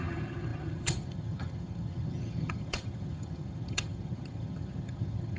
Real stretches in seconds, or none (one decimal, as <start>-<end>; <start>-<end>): none